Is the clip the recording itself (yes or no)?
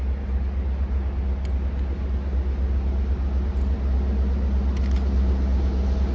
yes